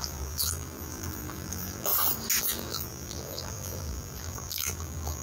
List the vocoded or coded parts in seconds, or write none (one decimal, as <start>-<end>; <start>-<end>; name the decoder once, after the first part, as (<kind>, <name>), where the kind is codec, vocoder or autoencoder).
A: 0.0-1.9 (vocoder, BigVGAN v2); 2.4-5.2